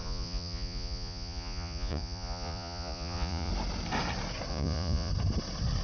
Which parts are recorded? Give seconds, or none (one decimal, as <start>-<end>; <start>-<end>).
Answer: 3.5-4.5; 5.1-5.8